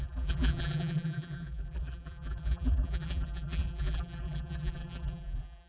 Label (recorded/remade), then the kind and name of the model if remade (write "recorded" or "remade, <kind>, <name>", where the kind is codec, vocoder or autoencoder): remade, vocoder, BigVGAN v2